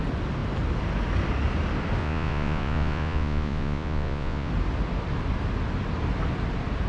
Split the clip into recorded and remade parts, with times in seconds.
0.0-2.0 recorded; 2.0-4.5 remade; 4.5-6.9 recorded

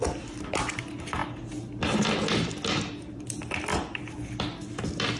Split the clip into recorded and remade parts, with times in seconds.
0.0-5.2 recorded

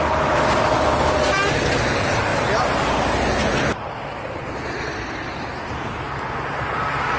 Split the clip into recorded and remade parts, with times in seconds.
0.0-7.2 recorded

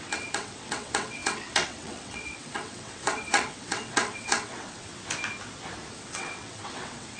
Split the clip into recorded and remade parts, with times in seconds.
0.0-4.9 remade; 4.9-5.9 recorded; 5.9-7.2 remade

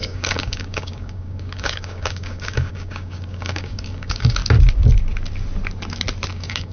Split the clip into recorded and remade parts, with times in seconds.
0.0-4.4 remade; 4.4-6.3 recorded; 6.3-6.7 remade

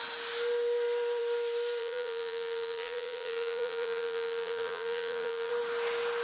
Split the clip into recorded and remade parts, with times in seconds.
0.0-1.8 recorded; 1.8-5.5 remade; 5.5-6.2 recorded

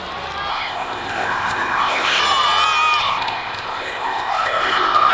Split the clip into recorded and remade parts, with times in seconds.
0.0-0.5 recorded; 0.5-2.2 remade; 2.2-3.0 recorded; 3.0-5.1 remade

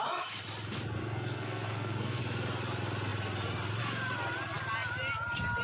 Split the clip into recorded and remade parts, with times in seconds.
0.0-1.0 recorded; 1.0-2.2 remade; 2.2-5.6 recorded